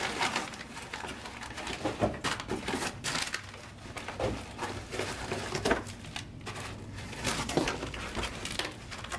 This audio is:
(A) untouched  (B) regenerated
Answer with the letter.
A